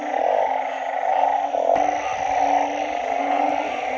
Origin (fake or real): real